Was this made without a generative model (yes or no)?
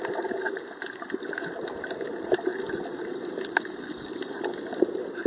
yes